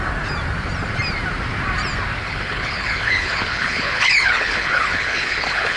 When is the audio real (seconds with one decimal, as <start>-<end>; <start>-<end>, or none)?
0.0-2.2